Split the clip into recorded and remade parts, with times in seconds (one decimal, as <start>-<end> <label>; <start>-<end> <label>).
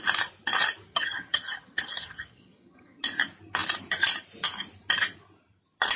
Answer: 0.0-0.9 recorded; 0.9-3.0 remade; 3.0-6.0 recorded